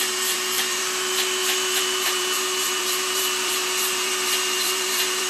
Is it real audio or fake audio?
fake